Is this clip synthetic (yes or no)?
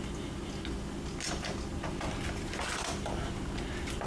no